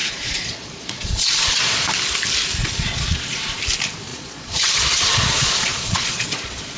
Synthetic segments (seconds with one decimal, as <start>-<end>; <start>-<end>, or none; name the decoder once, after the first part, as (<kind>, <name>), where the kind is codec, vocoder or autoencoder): 0.0-1.9 (vocoder, Vocos); 2.6-3.6; 4.1-6.8